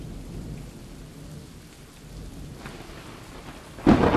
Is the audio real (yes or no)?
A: yes